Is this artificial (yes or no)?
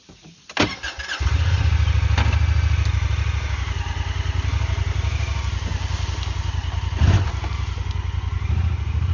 no